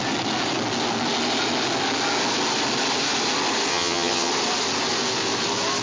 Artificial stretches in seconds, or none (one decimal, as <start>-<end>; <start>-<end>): 3.7-4.3